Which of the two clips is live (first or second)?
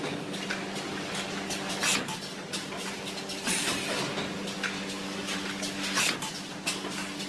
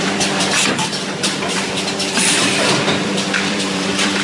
first